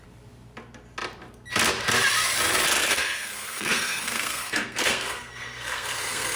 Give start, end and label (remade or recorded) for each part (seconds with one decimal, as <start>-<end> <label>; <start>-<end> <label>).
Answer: 0.0-2.8 recorded; 2.8-6.4 remade